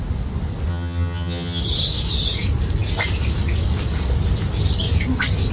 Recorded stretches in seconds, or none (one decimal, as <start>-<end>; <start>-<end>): 0.0-0.7; 1.6-5.5